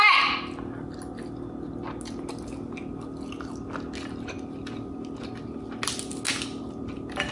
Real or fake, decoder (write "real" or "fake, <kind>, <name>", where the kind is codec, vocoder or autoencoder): real